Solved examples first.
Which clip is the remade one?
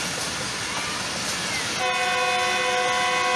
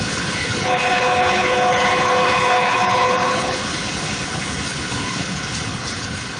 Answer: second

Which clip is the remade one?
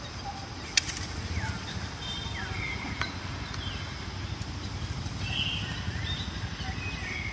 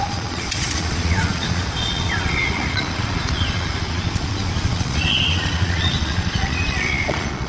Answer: second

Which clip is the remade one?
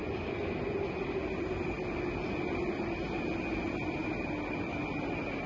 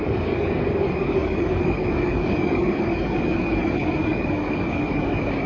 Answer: second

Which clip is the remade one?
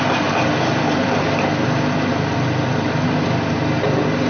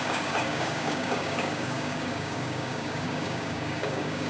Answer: second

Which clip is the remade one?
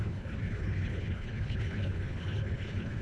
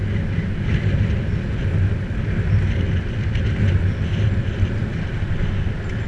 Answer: first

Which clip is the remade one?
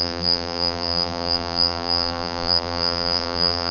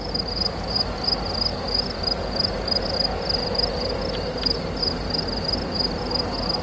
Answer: first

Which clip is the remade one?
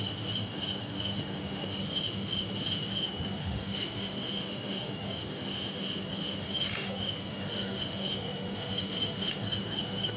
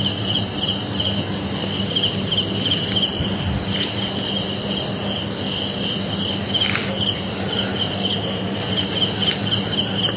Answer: first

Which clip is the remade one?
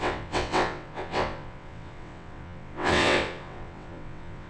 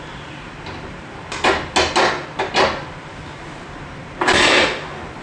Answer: first